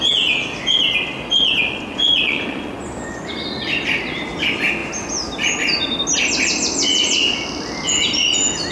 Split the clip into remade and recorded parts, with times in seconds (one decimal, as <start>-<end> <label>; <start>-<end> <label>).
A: 0.0-1.3 recorded; 1.3-3.7 remade; 3.7-8.7 recorded